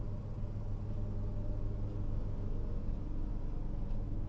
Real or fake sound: real